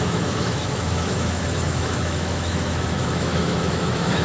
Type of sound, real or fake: fake